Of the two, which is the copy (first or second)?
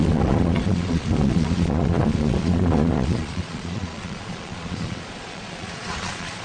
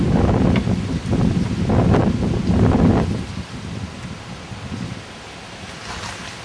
first